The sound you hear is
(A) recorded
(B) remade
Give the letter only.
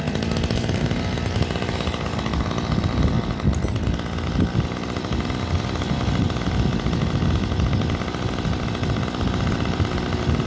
A